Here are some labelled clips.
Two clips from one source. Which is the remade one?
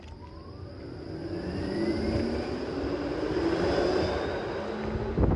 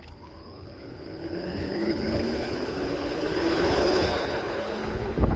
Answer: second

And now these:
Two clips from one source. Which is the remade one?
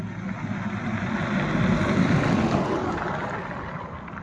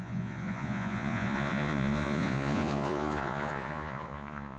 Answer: second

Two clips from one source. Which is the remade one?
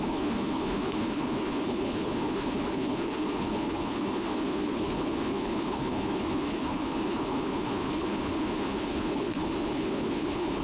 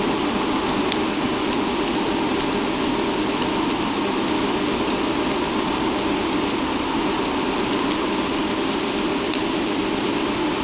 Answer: first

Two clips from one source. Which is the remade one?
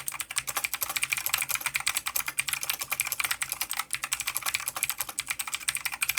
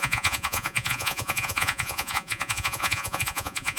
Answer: second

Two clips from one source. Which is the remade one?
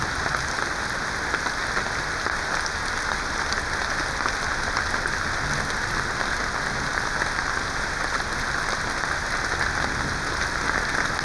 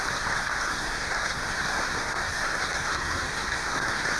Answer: second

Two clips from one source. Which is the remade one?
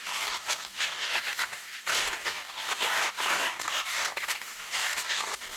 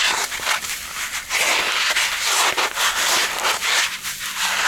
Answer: first